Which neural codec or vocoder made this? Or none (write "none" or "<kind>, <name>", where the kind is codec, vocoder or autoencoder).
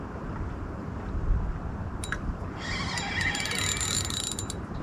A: none